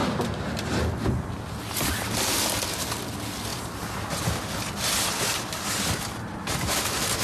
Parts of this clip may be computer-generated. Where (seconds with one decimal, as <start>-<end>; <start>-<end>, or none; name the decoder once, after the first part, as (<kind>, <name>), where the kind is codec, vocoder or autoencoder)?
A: 0.0-0.8 (vocoder, BigVGAN v2); 3.5-4.2